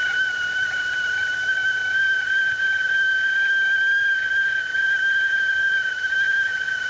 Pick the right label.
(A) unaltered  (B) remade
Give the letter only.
A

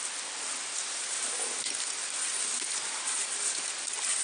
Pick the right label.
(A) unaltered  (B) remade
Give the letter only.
A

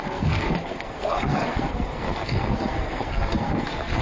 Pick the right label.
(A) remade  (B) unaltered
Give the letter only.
A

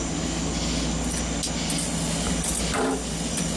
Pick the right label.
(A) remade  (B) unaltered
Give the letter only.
B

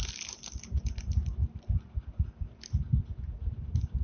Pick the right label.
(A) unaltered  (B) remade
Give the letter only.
A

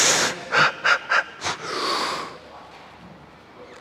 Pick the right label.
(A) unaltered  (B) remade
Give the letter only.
A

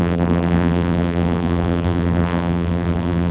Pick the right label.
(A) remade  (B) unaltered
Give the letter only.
A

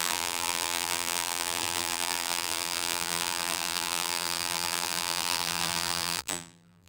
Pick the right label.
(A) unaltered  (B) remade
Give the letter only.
B